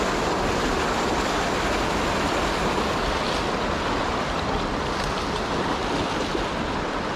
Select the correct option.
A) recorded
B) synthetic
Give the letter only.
A